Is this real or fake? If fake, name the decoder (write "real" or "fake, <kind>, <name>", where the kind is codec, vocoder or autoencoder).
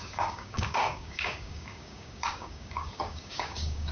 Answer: fake, codec, DAC